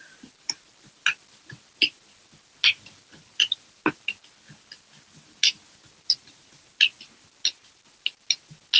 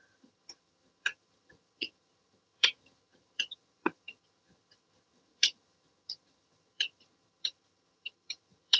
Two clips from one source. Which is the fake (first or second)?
second